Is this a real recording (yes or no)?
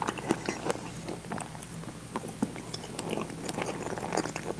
yes